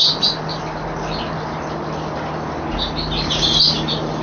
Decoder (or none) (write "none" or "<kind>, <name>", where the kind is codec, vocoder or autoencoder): none